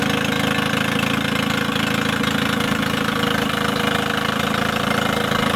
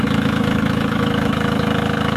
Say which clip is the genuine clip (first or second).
first